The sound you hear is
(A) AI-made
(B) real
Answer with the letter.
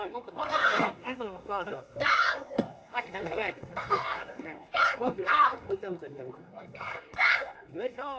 A